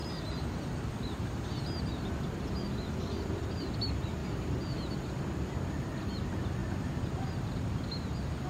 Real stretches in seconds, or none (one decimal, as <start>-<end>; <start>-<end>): 1.3-4.2; 5.2-6.6; 7.7-8.5